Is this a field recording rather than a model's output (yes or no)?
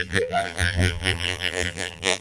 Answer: no